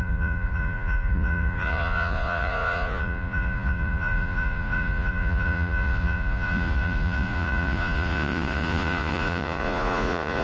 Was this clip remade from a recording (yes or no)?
yes